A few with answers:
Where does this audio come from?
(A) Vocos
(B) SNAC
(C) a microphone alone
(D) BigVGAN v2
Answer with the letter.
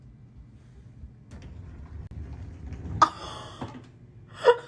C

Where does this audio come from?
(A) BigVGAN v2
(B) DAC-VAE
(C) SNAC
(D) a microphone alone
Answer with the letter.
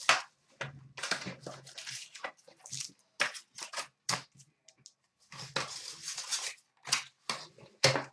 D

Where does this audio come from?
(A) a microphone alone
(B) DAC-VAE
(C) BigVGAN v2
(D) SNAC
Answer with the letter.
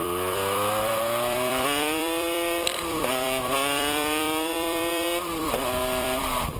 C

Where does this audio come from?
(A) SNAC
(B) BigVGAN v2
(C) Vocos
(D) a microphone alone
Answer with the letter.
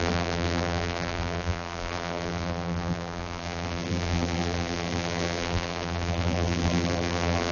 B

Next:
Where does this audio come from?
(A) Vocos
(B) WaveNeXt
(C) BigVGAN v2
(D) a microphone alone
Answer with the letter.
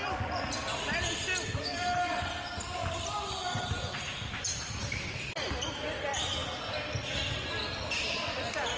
D